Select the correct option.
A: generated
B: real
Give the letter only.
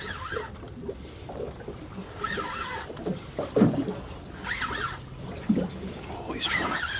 B